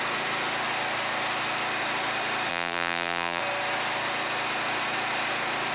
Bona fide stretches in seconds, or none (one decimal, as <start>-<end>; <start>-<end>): 0.0-2.5; 3.4-5.7